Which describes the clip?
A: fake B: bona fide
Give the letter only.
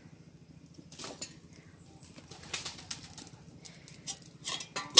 B